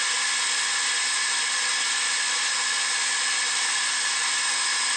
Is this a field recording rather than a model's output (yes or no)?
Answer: yes